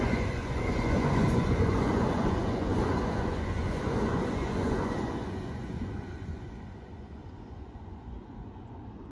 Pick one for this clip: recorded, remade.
remade